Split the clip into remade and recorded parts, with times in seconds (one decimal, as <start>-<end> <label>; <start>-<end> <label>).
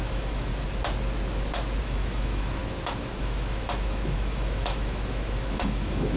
0.0-0.5 remade; 0.5-1.8 recorded; 1.8-2.6 remade; 2.6-3.2 recorded; 3.2-6.2 remade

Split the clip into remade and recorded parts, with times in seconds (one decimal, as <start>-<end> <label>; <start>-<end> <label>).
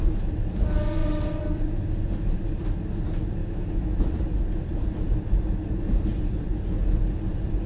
0.0-3.4 recorded; 3.4-4.1 remade; 4.1-7.7 recorded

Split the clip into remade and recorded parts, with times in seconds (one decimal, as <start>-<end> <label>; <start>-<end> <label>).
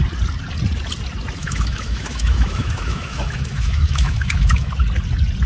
0.0-1.4 recorded; 1.4-4.7 remade; 4.7-5.5 recorded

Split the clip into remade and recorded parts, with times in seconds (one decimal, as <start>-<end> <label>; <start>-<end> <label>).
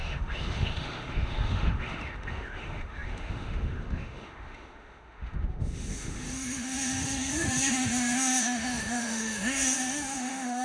0.0-10.6 remade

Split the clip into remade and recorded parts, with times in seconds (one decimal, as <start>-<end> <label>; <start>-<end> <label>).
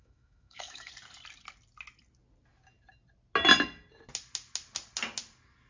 0.0-0.9 remade; 0.9-5.7 recorded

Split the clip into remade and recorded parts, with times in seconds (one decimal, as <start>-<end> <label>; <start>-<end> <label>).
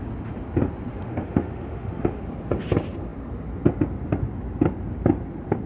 0.0-0.9 recorded; 0.9-2.2 remade; 2.2-5.7 recorded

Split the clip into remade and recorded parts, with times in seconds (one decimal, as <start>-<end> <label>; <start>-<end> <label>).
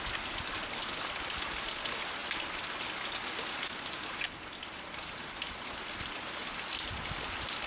0.0-7.7 recorded